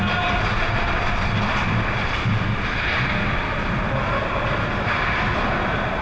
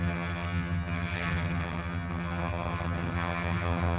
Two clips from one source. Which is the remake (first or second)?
second